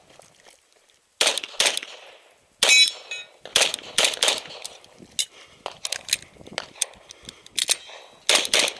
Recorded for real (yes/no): yes